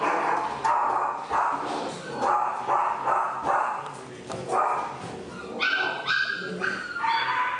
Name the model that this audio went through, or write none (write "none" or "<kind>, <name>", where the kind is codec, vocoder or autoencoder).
none